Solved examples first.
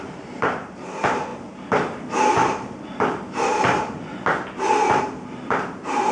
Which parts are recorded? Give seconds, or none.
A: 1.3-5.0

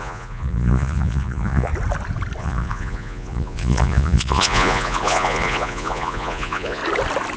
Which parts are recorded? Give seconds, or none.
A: 1.7-2.4; 6.8-7.4

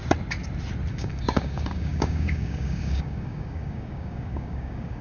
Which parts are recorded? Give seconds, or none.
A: 0.0-0.9

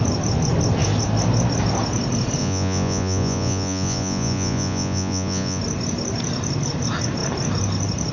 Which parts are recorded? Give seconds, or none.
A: 0.0-2.4; 5.6-8.1